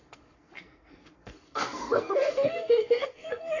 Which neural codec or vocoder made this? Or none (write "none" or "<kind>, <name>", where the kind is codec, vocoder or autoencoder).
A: codec, SNAC